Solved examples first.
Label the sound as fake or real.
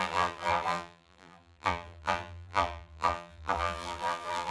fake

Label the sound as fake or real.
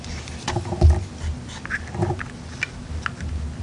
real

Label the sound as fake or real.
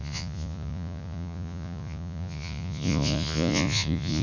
fake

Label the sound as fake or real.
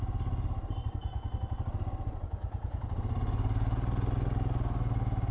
real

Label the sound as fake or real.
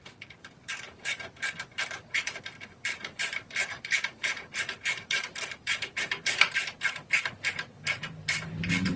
fake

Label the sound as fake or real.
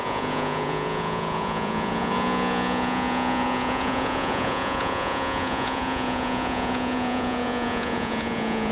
fake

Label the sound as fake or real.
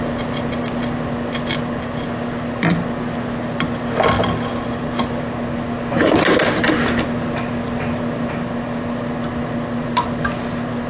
real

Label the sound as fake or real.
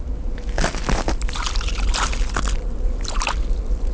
real